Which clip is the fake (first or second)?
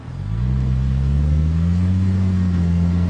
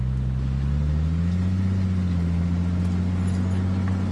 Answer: first